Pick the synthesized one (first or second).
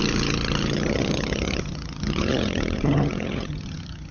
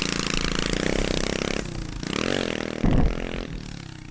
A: first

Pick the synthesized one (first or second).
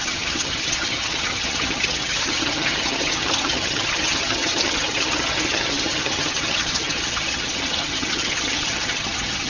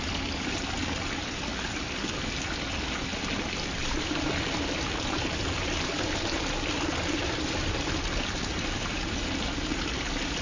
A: first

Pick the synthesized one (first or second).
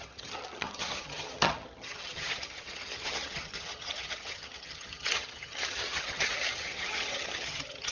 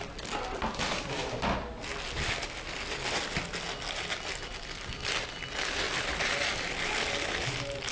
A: first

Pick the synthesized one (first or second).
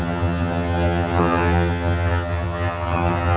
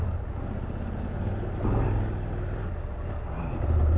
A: first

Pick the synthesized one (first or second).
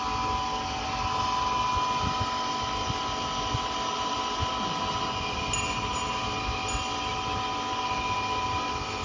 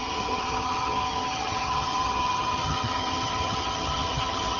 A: second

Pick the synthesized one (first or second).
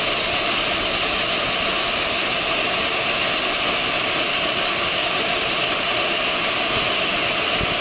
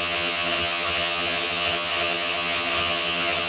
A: second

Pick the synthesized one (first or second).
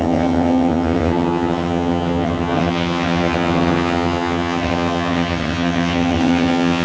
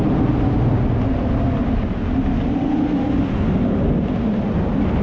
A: first